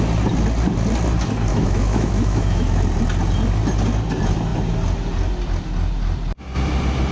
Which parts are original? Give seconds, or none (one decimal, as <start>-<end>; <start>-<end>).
0.0-1.5; 2.8-7.1